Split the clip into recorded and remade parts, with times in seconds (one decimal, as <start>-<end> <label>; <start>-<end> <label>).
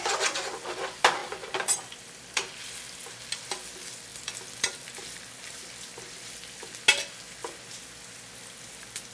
0.0-1.2 recorded; 1.2-3.0 remade; 3.0-4.1 recorded; 4.1-5.0 remade; 5.0-9.1 recorded